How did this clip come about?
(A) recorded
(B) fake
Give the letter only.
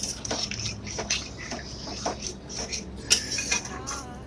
A